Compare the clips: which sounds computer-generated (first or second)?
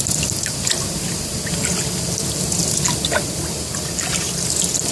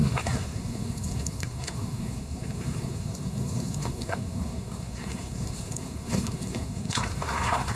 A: second